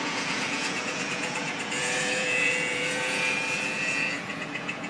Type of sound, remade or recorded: remade